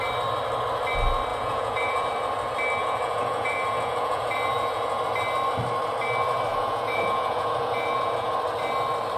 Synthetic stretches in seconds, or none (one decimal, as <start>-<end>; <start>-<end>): 1.3-2.1; 2.8-5.0; 6.5-8.3